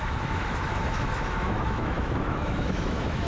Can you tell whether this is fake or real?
fake